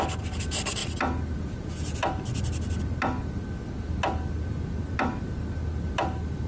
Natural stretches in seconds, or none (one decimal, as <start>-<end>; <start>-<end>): 0.0-6.5